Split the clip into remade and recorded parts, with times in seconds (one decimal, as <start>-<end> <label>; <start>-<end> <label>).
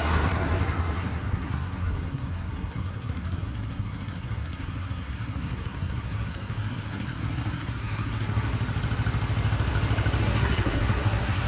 0.0-8.5 remade; 8.5-10.2 recorded; 10.2-11.5 remade